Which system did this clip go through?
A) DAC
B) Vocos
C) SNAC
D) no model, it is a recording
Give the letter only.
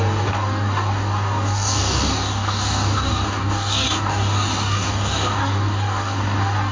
A